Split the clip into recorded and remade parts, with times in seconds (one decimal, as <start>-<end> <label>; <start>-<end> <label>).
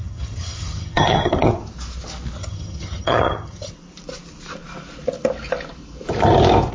0.0-1.6 remade; 1.6-2.4 recorded; 2.4-3.7 remade; 3.7-6.7 recorded